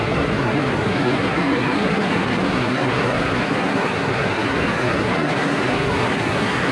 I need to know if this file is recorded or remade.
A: remade